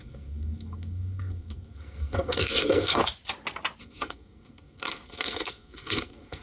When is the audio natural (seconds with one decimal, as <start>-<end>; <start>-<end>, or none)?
3.0-3.8